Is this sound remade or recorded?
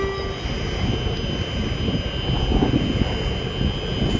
recorded